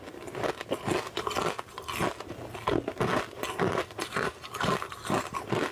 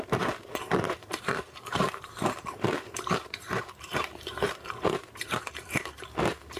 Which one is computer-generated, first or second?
second